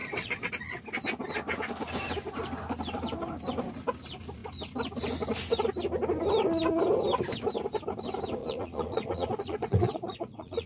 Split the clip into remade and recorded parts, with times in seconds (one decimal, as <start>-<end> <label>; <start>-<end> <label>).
0.0-0.5 remade; 0.5-8.4 recorded; 8.4-10.7 remade